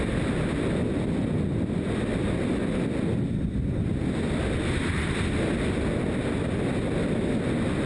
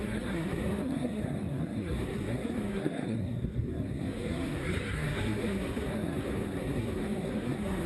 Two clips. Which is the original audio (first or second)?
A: first